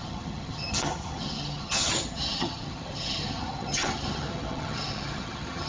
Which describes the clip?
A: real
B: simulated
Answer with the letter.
B